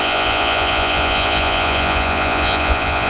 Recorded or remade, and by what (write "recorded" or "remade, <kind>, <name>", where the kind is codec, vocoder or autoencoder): remade, vocoder, Vocos